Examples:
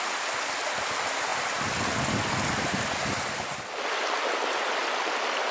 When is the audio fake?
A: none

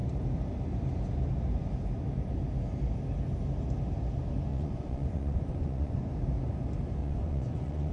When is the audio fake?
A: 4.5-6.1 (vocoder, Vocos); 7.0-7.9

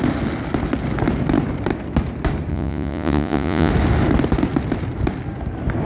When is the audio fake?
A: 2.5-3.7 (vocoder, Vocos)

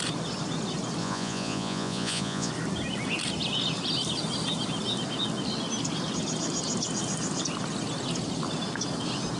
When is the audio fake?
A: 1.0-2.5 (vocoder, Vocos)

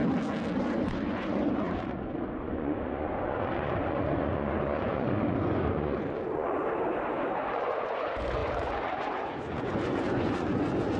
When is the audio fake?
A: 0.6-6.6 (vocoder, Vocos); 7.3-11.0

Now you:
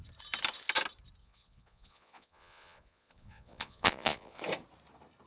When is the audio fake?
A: 1.2-4.4 (vocoder, Vocos)

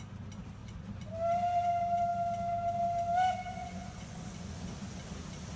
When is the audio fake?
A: 0.6-1.1 (vocoder, Vocos); 3.6-4.7

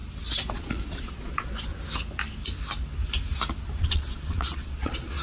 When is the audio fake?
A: 0.5-1.7 (vocoder, Vocos); 3.8-5.2